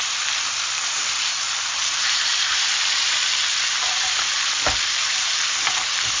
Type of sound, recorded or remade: remade